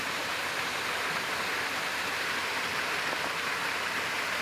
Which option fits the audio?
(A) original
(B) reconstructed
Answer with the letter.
A